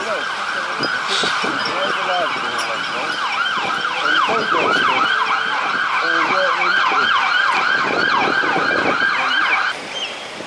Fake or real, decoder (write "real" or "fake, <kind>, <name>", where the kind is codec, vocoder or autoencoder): real